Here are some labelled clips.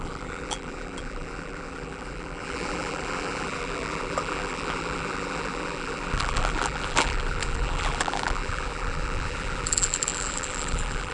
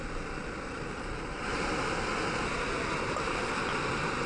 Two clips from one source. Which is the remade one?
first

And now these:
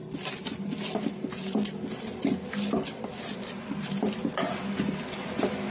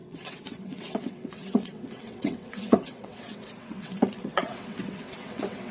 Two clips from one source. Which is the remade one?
second